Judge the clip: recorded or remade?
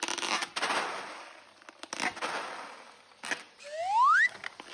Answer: recorded